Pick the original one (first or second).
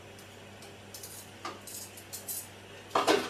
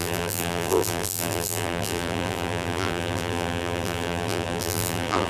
first